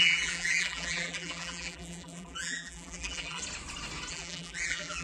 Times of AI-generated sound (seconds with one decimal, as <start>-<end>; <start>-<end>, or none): 0.0-3.4; 4.1-5.0

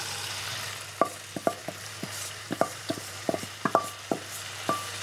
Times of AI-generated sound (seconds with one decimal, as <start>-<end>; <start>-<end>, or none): 1.6-3.8

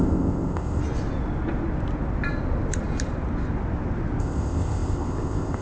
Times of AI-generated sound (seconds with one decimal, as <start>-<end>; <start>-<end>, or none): 0.0-0.8; 4.2-5.6

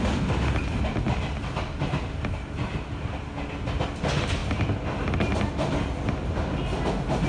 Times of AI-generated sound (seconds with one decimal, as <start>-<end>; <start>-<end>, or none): none

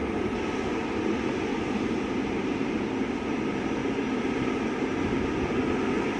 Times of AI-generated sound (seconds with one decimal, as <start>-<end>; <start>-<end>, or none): 0.0-0.9; 1.5-2.9